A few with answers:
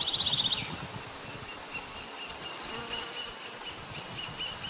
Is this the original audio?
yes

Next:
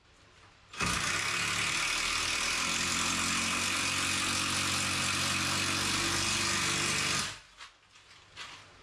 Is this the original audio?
yes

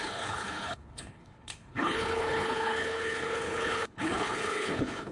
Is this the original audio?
no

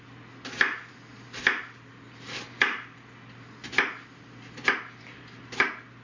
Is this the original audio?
yes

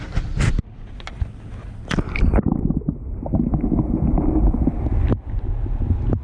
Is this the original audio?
yes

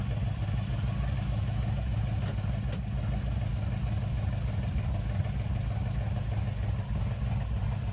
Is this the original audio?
yes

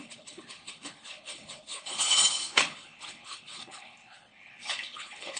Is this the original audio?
no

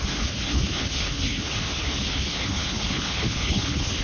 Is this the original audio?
no